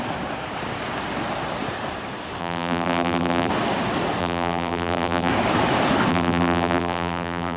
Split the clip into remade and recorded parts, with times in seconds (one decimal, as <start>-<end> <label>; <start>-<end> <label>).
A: 0.0-2.4 recorded; 2.4-3.5 remade; 3.5-4.2 recorded; 4.2-5.3 remade; 5.3-6.1 recorded; 6.1-7.6 remade